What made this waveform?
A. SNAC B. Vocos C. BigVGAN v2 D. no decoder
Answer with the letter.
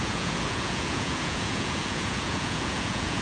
B